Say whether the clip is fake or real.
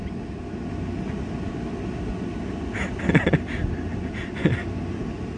real